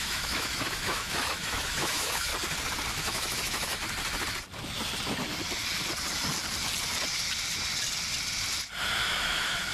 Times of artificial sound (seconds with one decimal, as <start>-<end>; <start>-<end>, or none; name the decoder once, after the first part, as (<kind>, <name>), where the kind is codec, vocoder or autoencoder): 0.0-2.3 (autoencoder, DAC-VAE); 2.9-3.8; 8.8-9.7